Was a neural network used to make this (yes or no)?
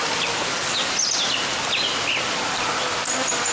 no